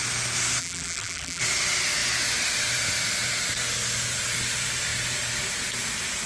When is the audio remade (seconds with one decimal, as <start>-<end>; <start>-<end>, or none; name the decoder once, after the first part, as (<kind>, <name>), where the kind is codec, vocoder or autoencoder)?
0.6-1.4 (vocoder, BigVGAN v2)